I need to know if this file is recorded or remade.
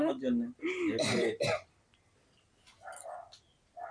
recorded